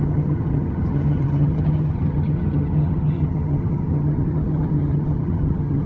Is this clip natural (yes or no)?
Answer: no